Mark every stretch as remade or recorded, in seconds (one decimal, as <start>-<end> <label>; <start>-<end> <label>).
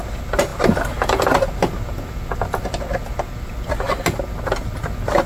0.0-5.3 recorded